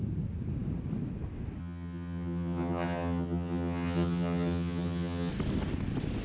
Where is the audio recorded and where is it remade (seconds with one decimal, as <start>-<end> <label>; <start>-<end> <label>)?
0.0-1.6 recorded; 1.6-5.3 remade; 5.3-6.2 recorded